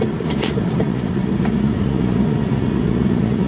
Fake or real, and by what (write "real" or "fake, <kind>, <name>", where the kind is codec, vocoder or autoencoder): fake, vocoder, Vocos